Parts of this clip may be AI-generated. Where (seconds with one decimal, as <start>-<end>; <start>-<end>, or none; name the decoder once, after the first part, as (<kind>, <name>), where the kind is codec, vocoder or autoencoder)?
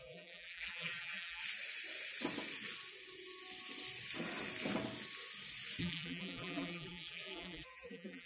0.0-1.4 (vocoder, BigVGAN v2); 5.8-8.3